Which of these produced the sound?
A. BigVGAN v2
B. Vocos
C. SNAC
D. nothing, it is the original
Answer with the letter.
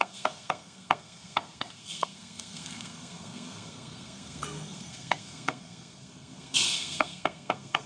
C